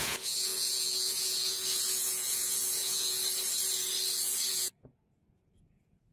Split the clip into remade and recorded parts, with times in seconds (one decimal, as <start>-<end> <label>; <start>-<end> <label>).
0.0-3.2 remade; 3.2-4.5 recorded; 4.5-6.1 remade